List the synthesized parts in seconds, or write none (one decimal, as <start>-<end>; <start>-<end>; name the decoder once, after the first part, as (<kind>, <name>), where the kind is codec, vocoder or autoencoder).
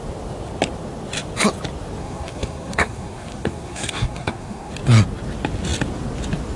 2.0-4.7 (codec, SNAC)